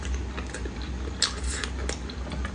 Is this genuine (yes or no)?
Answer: yes